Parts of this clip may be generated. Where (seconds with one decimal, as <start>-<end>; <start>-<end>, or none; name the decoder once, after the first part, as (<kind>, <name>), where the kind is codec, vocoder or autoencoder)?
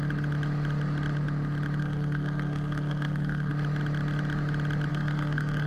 1.8-3.5 (codec, SNAC); 4.9-5.7